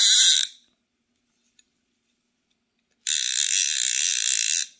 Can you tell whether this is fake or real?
real